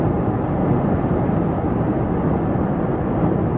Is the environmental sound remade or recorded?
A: recorded